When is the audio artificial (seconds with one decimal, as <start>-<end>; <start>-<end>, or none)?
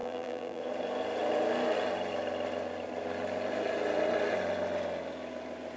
0.0-0.6